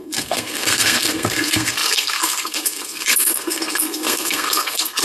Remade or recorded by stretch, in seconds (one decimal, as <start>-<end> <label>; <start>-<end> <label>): 0.0-5.0 remade